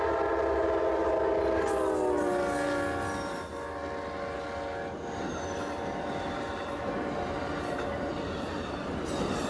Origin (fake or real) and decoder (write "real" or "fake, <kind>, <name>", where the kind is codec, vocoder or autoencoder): real